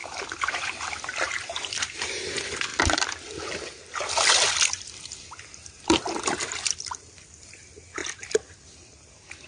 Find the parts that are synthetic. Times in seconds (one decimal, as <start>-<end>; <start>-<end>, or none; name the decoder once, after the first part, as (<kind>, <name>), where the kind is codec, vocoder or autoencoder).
0.0-0.8 (vocoder, BigVGAN v2); 2.7-7.1